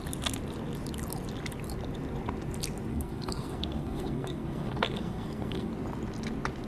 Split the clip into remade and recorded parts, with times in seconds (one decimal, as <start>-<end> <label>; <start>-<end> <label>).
0.0-2.9 recorded; 2.9-5.7 remade; 5.7-6.7 recorded